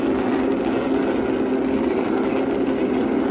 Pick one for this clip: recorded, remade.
recorded